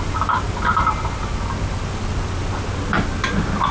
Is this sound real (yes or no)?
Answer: yes